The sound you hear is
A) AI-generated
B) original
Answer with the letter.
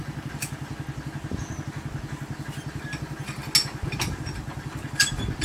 B